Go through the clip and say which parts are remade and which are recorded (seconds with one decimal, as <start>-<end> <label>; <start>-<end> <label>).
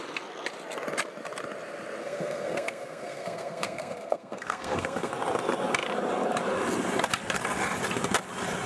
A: 0.0-2.0 recorded; 2.0-5.1 remade; 5.1-8.7 recorded